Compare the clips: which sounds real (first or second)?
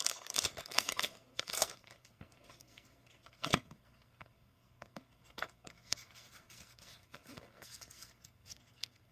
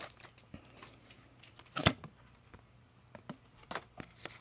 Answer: second